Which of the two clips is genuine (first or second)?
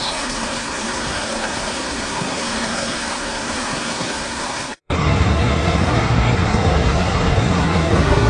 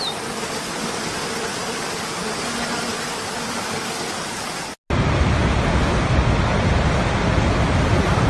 second